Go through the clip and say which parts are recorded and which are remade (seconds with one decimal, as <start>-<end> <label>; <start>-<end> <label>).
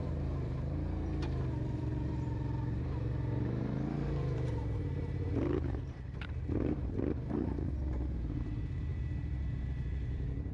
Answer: 0.0-10.5 remade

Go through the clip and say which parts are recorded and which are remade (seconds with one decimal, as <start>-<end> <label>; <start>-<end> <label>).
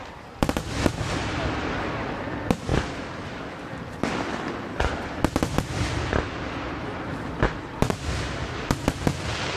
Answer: 0.0-9.6 recorded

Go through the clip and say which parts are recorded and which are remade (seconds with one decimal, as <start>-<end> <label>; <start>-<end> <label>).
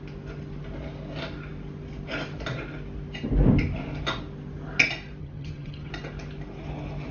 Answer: 0.0-5.2 recorded; 5.2-5.9 remade; 5.9-7.1 recorded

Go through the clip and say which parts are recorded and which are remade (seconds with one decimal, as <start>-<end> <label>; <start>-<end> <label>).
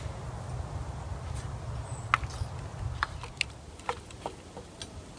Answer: 0.0-5.2 recorded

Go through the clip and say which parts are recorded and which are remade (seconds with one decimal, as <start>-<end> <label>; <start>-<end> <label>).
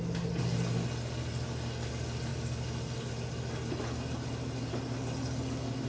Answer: 0.0-5.9 recorded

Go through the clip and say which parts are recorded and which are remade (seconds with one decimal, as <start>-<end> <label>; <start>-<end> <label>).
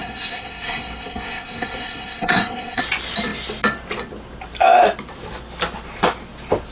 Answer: 0.0-2.8 remade; 2.8-6.7 recorded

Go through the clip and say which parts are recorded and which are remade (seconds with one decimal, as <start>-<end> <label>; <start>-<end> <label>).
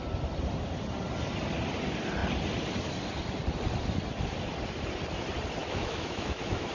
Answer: 0.0-5.6 recorded; 5.6-6.7 remade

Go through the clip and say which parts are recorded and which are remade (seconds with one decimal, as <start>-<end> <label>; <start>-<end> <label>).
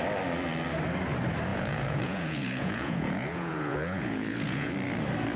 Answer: 0.0-1.5 recorded; 1.5-4.7 remade; 4.7-5.4 recorded